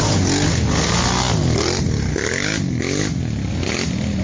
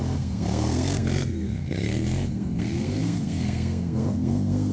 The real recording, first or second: first